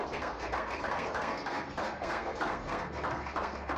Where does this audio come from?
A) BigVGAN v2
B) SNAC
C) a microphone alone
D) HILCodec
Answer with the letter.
B